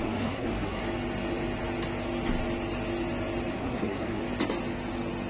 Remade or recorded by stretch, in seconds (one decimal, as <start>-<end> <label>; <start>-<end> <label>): 0.0-0.8 remade; 0.8-3.5 recorded; 3.5-4.2 remade; 4.2-5.3 recorded